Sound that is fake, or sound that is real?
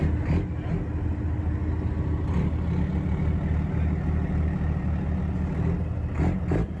real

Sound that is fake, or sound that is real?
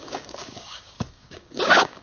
fake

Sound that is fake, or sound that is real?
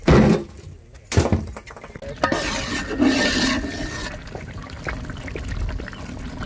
real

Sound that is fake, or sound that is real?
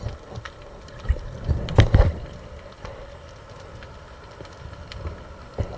real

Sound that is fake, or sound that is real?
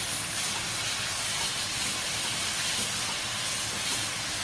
real